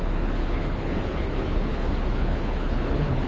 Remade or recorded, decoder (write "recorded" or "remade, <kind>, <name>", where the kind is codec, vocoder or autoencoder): remade, codec, HILCodec